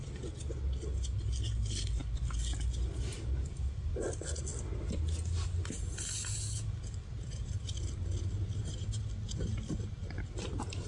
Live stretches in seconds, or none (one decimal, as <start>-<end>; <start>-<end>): 0.0-10.9